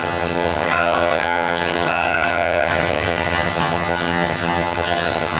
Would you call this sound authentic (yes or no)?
no